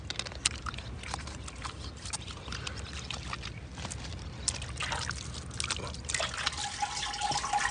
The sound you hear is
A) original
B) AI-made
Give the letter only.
A